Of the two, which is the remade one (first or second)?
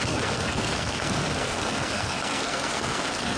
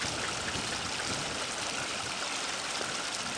first